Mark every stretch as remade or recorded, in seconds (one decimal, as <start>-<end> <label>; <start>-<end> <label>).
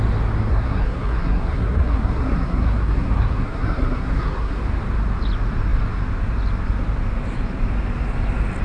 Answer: 0.0-0.5 recorded; 0.5-4.6 remade; 4.6-8.6 recorded